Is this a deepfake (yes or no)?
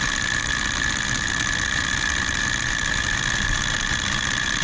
no